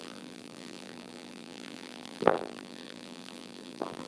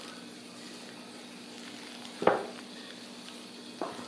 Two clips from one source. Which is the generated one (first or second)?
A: first